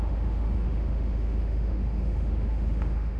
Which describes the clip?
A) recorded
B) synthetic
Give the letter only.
B